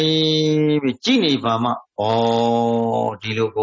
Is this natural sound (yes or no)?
yes